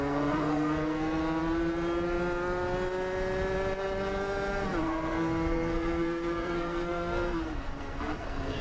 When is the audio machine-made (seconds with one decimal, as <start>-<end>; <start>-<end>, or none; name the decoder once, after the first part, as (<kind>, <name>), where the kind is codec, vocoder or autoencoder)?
0.0-1.2 (codec, SNAC); 4.8-8.6